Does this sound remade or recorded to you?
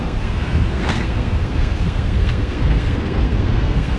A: remade